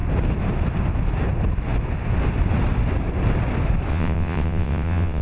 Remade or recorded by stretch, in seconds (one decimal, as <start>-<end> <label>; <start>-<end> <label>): 0.0-3.9 recorded; 3.9-5.2 remade

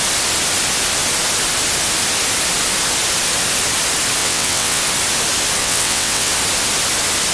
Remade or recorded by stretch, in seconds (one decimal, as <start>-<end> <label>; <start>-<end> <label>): 0.0-4.2 recorded; 4.2-4.8 remade; 4.8-5.6 recorded; 5.6-6.3 remade; 6.3-7.3 recorded

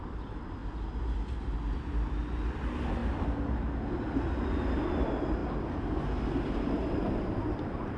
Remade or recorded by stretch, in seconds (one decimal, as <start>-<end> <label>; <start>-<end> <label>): 0.0-8.0 recorded

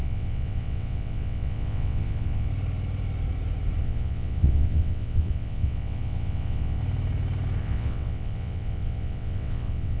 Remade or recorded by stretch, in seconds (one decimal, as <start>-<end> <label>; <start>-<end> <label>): 0.0-2.5 remade; 2.5-3.8 recorded; 3.8-6.8 remade; 6.8-7.6 recorded; 7.6-10.0 remade

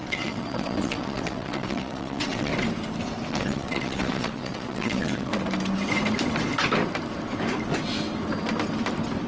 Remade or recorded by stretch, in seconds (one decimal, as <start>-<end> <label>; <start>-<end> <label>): 0.0-2.5 remade; 2.5-3.3 recorded; 3.3-5.3 remade; 5.3-9.3 recorded

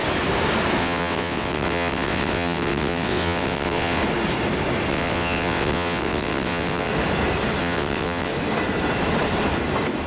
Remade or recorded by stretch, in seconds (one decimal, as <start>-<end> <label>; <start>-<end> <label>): 0.0-0.8 recorded; 0.8-4.0 remade; 4.0-4.9 recorded; 4.9-6.9 remade; 6.9-7.6 recorded; 7.6-8.3 remade; 8.3-10.1 recorded

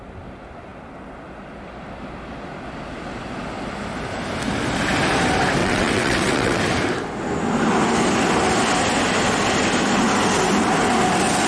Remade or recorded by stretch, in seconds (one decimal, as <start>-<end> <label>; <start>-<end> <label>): 0.0-5.6 recorded; 5.6-6.6 remade; 6.6-11.5 recorded